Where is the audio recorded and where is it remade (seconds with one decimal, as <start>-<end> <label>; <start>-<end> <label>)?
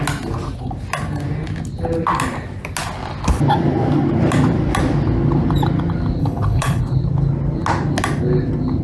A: 0.0-6.2 recorded; 6.2-6.8 remade; 6.8-8.8 recorded